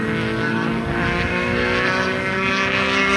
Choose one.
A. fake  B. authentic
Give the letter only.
A